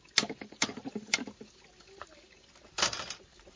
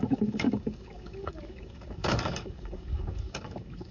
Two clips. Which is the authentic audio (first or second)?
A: first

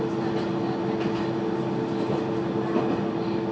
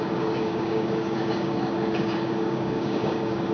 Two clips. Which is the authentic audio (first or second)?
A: first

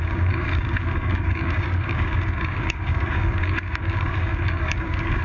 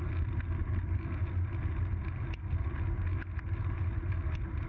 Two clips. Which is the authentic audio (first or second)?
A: second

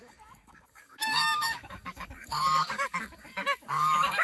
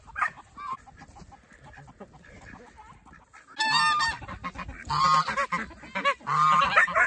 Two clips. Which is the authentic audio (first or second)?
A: second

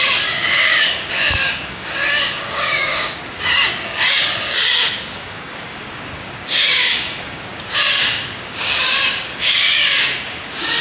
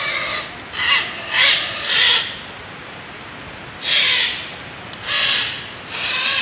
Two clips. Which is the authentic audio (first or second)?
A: second